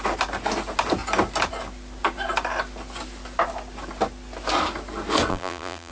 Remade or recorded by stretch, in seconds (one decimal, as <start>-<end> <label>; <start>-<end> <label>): 0.0-5.3 recorded; 5.3-5.9 remade